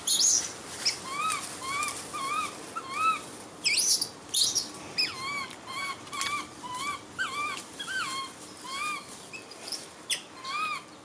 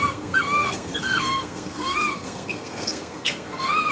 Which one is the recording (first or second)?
first